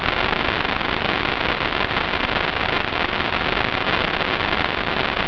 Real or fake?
real